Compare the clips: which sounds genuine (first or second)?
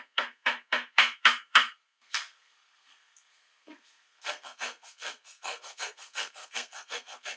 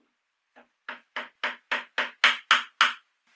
second